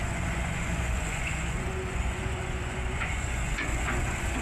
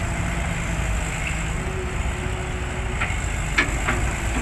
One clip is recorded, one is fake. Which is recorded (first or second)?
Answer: second